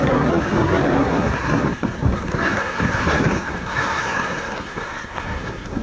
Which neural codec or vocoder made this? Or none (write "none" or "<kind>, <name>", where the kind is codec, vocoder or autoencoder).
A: codec, SNAC